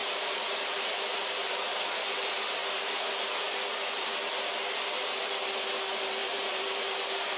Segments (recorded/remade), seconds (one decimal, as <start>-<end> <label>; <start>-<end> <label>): 0.0-0.7 remade; 0.7-6.2 recorded; 6.2-7.4 remade

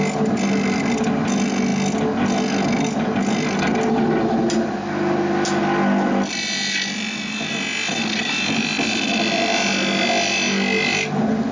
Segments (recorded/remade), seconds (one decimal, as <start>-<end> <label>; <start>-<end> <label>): 0.0-11.5 recorded

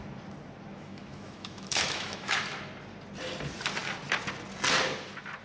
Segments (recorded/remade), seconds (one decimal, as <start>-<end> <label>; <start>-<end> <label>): 0.0-0.7 recorded; 0.7-2.4 remade; 2.4-5.4 recorded

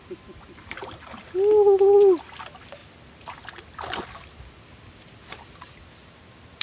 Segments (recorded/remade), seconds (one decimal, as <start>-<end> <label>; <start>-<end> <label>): 0.0-6.6 recorded

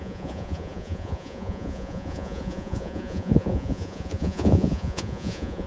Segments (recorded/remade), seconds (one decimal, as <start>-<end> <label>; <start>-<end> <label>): 0.0-5.7 remade

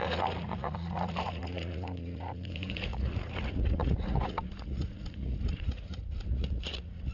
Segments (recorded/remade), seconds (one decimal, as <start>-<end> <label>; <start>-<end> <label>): 0.0-7.1 remade

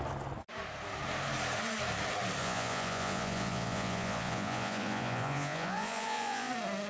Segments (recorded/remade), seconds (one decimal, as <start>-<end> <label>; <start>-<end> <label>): 0.0-2.4 recorded; 2.4-6.5 remade; 6.5-6.9 recorded

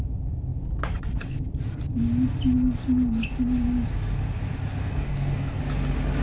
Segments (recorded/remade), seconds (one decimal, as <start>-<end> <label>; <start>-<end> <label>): 0.0-4.8 recorded; 4.8-5.6 remade; 5.6-6.2 recorded